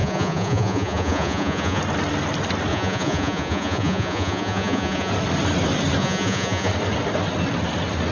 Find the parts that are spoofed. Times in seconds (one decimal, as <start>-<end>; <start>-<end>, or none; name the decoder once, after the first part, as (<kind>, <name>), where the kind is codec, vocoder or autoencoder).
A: 0.0-1.8 (vocoder, Vocos); 2.7-5.1; 6.0-6.7